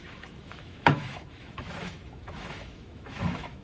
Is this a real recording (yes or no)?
no